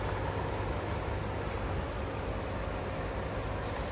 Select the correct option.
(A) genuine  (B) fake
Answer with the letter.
A